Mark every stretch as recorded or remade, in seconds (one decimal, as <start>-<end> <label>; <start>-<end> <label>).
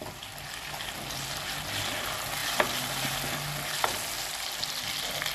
0.0-5.3 recorded